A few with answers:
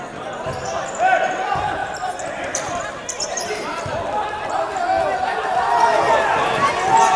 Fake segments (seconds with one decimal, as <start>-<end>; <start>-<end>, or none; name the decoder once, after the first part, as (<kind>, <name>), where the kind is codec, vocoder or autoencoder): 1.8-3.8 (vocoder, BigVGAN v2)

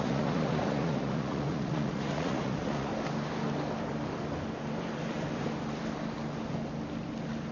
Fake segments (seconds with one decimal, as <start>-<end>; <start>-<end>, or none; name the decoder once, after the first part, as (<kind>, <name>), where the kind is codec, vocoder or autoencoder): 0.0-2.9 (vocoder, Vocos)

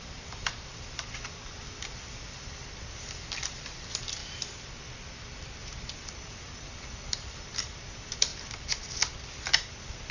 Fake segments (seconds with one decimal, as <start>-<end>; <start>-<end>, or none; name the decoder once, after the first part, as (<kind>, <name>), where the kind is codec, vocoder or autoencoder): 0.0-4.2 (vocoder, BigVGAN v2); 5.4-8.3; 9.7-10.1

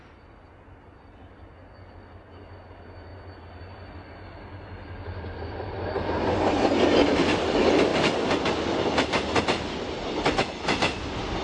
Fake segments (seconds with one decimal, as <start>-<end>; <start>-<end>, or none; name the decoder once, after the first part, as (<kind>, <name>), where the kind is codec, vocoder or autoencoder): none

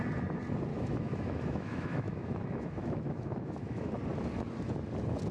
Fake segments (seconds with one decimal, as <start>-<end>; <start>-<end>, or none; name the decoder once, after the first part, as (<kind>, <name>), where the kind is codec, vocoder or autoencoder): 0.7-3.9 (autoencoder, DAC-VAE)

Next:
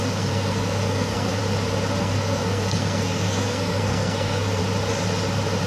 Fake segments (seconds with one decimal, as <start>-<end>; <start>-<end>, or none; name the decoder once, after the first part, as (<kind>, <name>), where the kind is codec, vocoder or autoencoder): 0.0-1.4 (codec, SNAC); 2.0-4.6

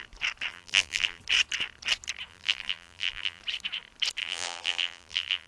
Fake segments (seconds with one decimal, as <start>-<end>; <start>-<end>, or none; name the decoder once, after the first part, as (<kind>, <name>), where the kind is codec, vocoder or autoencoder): 0.5-1.2 (vocoder, BigVGAN v2); 2.3-3.4; 4.2-5.5